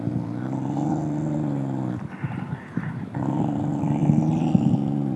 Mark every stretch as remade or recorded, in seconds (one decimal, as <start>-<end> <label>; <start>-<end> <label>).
0.0-5.2 recorded